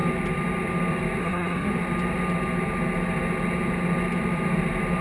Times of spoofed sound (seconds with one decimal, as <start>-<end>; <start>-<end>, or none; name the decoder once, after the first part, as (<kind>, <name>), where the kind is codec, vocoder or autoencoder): 1.2-1.7 (codec, SNAC)